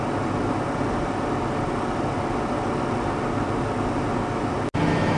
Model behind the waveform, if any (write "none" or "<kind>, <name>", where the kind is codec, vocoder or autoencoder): none